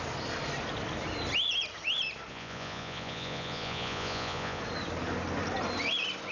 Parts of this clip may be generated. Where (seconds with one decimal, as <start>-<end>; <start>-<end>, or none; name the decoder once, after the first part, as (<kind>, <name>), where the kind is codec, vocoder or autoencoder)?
2.3-4.6 (vocoder, Vocos)